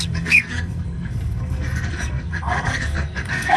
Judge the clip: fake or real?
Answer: fake